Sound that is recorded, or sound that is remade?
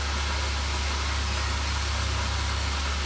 recorded